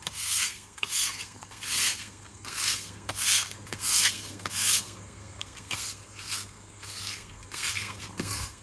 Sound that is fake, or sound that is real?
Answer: fake